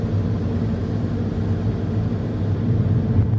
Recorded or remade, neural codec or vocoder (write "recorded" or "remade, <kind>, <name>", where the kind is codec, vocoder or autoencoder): recorded